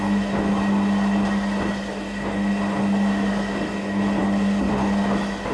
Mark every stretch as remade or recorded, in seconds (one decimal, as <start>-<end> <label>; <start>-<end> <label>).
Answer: 0.0-5.5 recorded